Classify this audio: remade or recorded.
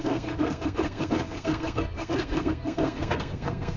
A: remade